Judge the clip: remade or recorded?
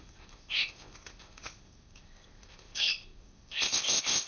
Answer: remade